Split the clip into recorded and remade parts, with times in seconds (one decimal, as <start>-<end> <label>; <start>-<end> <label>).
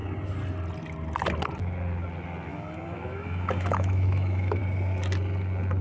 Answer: 0.0-2.5 recorded; 2.5-4.6 remade; 4.6-5.8 recorded